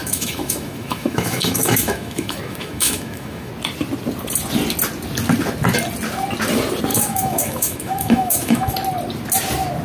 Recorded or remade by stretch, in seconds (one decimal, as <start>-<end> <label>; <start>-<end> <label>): 0.0-3.5 remade; 3.5-6.9 recorded; 6.9-8.7 remade; 8.7-9.8 recorded